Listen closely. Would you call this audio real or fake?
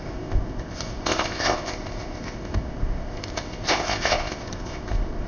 fake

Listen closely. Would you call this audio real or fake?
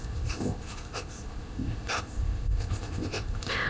fake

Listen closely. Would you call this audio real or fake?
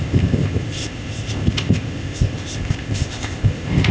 fake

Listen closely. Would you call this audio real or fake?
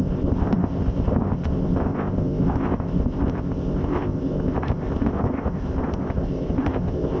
fake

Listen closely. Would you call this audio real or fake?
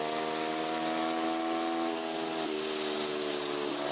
real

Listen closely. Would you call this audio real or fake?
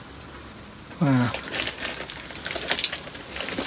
real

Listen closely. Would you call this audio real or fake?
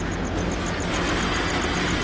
real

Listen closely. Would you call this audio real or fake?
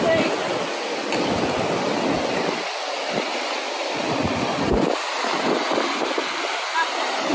real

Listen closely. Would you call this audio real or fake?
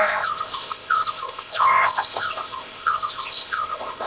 fake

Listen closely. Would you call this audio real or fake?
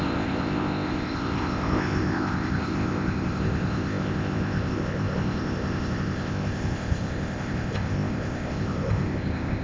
fake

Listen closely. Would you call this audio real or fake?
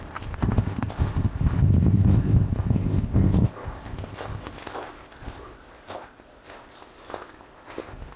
fake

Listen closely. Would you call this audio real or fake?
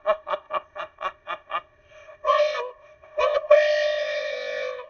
fake